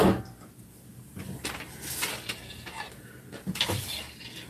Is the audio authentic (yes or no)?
yes